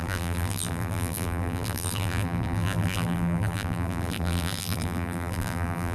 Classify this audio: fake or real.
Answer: fake